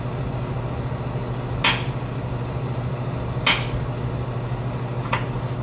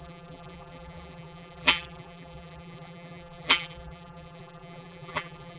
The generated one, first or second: second